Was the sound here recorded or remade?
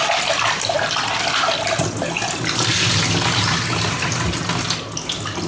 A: recorded